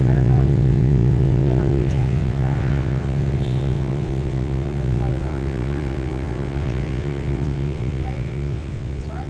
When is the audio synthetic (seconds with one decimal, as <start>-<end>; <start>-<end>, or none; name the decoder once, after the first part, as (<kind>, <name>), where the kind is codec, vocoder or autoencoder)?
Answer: 0.0-9.3 (vocoder, WaveNeXt)